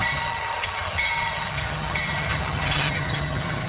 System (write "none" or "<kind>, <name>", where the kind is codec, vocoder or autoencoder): vocoder, HiFi-GAN